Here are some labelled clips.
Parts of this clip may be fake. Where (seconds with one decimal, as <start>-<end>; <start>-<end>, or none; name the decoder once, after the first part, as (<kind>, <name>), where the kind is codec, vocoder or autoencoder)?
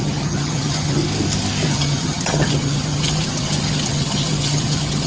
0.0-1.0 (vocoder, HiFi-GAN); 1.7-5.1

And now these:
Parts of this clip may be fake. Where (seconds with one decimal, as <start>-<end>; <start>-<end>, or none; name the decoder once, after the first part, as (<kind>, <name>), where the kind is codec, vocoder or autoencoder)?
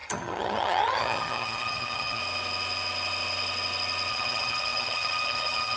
0.0-2.2 (vocoder, HiFi-GAN); 4.1-5.8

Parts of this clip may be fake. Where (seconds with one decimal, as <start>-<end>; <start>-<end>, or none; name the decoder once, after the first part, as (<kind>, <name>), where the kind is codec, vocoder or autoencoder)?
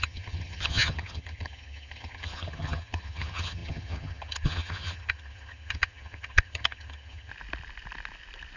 0.0-7.3 (vocoder, HiFi-GAN)